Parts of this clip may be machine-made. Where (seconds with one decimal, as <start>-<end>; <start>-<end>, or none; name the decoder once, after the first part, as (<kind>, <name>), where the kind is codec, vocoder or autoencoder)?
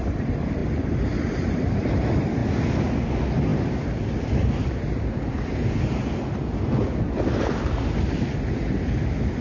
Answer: none